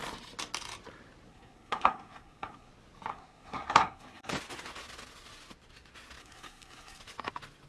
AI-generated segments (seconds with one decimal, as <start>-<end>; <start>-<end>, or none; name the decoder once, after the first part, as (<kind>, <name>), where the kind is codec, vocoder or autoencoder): 1.3-2.7 (codec, SNAC); 3.1-4.3; 6.2-7.0